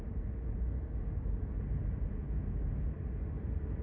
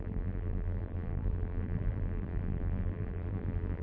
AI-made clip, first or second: second